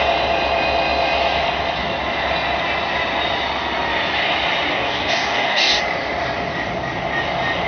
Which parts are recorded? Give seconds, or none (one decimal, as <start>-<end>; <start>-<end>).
0.0-4.7; 5.8-7.7